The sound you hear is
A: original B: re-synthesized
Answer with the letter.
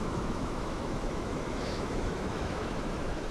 B